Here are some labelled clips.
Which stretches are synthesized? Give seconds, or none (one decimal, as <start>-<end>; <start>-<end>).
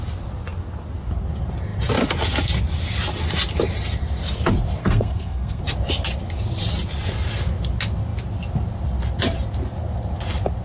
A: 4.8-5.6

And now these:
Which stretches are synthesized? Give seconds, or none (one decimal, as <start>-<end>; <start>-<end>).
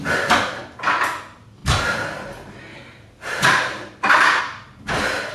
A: none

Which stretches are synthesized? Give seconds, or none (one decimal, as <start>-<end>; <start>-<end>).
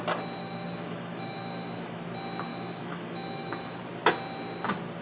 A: 0.4-2.0; 2.5-3.8